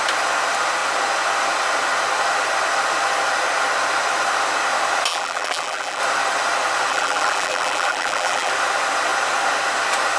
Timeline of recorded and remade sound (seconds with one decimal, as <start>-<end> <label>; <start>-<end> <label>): 0.0-5.1 recorded; 5.1-6.0 remade; 6.0-6.9 recorded; 6.9-8.5 remade; 8.5-10.2 recorded